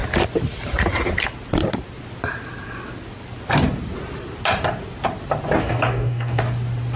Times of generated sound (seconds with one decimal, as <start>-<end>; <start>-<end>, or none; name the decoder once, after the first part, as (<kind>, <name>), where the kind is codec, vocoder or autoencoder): 5.6-6.4 (codec, DAC)